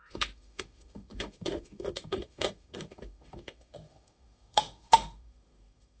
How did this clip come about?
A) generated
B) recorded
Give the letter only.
A